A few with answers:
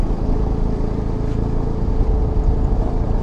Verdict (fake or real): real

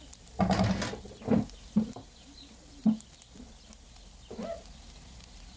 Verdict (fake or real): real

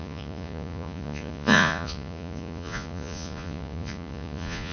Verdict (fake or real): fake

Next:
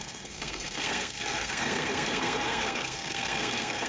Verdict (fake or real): fake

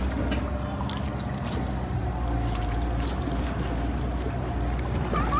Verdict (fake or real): real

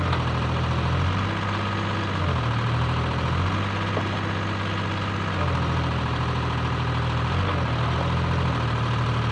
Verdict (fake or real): real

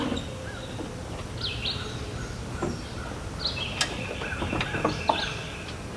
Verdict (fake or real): real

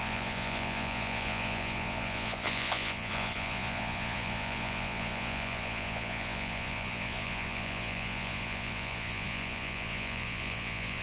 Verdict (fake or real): fake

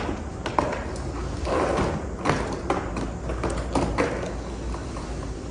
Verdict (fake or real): real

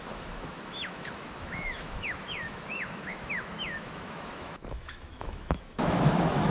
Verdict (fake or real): fake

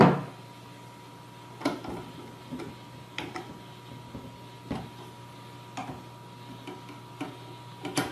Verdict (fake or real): real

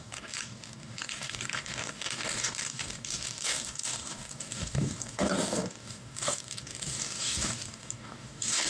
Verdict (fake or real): fake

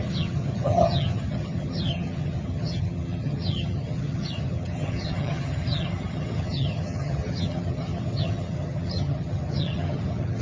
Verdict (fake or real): fake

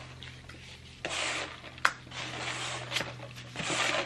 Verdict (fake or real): real